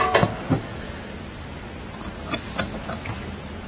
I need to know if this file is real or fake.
real